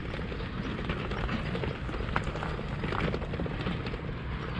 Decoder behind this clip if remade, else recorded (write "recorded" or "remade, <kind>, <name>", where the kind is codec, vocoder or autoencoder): recorded